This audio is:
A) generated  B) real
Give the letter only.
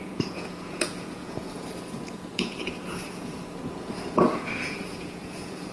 A